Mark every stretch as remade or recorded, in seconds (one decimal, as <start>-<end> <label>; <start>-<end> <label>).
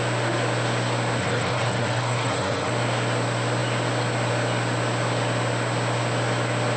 0.0-1.2 recorded; 1.2-2.7 remade; 2.7-6.8 recorded